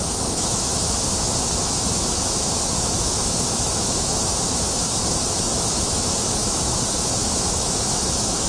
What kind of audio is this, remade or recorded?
remade